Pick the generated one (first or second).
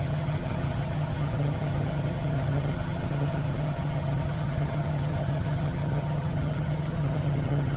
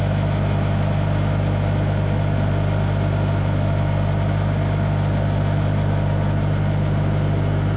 first